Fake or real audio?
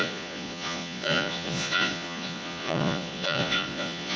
fake